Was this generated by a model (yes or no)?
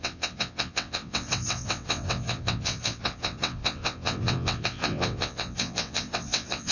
yes